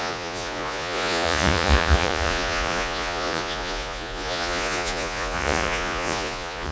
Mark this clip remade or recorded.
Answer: remade